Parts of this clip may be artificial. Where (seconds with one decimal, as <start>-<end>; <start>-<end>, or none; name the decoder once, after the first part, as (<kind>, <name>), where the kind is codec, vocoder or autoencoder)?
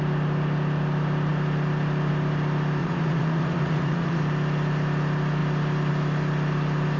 2.8-4.2 (vocoder, Vocos)